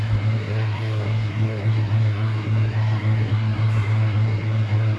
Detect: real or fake fake